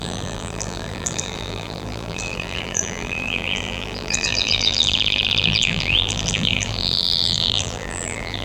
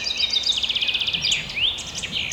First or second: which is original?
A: second